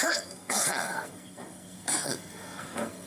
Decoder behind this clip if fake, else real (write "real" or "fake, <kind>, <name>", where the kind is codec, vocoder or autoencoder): fake, codec, SNAC